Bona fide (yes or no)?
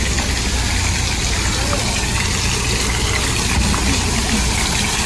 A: yes